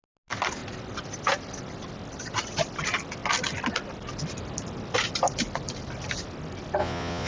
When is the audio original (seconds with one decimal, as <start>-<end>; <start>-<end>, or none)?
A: 0.0-6.8